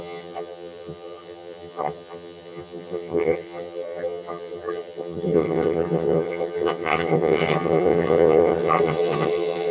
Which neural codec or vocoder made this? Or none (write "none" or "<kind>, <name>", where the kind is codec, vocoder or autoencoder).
vocoder, HiFi-GAN